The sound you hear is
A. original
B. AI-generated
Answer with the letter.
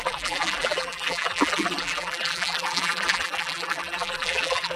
B